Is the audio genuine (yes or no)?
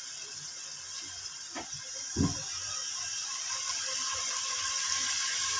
yes